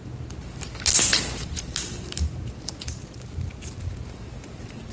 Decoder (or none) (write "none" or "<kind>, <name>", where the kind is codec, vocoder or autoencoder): none